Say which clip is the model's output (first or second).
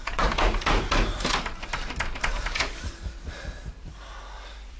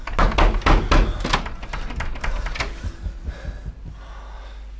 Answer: first